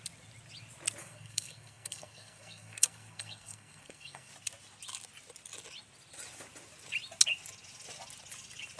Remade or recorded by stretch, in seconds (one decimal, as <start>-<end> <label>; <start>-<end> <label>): 0.0-1.0 recorded; 1.0-4.3 remade; 4.3-8.8 recorded